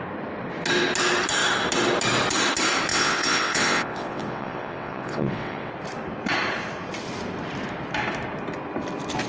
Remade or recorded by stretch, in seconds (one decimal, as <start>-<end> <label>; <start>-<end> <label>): 0.0-2.9 recorded; 2.9-5.7 remade; 5.7-9.3 recorded